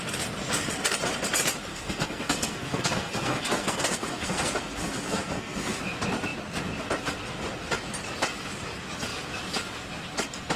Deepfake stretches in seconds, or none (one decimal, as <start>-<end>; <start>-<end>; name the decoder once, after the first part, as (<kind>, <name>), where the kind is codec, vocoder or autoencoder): 1.7-5.8 (codec, SNAC)